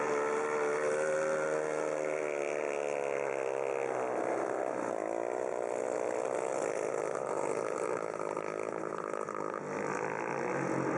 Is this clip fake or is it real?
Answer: real